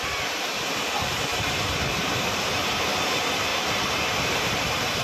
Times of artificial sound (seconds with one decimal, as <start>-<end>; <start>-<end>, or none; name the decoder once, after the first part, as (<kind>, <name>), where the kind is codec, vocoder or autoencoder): 1.3-2.6 (vocoder, BigVGAN v2); 3.5-4.5